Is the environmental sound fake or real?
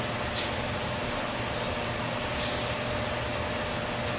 real